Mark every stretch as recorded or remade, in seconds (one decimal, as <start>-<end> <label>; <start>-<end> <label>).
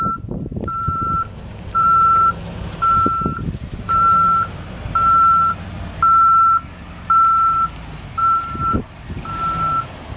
0.0-0.5 recorded; 0.5-4.2 remade; 4.2-8.2 recorded; 8.2-8.8 remade; 8.8-10.2 recorded